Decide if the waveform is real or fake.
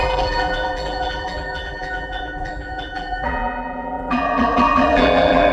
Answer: fake